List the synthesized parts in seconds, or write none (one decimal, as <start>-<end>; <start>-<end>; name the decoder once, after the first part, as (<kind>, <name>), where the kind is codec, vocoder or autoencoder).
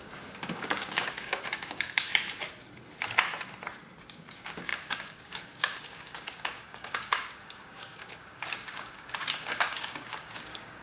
0.0-2.1 (codec, DAC); 4.1-10.8